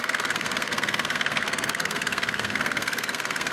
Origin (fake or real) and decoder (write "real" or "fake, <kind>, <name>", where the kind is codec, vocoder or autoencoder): fake, codec, SNAC